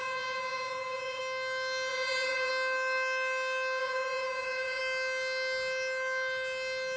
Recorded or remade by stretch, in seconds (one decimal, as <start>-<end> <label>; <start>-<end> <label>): 0.0-1.2 remade; 1.2-1.9 recorded; 1.9-2.5 remade; 2.5-3.8 recorded; 3.8-4.8 remade; 4.8-7.0 recorded